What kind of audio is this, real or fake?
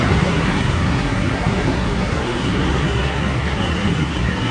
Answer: fake